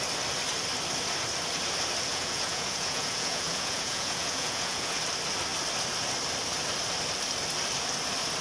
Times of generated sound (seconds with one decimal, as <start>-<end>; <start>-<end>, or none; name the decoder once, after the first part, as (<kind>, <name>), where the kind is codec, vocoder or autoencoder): 2.1-5.0 (vocoder, Vocos)